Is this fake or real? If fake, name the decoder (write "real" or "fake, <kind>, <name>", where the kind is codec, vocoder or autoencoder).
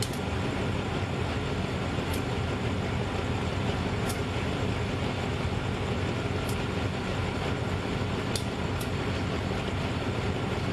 real